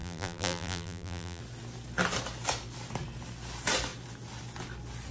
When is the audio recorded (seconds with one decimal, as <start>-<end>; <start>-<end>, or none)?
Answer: 1.4-5.1